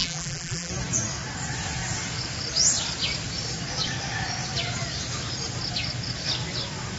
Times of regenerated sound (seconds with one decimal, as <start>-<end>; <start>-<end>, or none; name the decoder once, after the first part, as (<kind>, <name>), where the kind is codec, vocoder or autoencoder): 0.0-0.7 (vocoder, BigVGAN v2)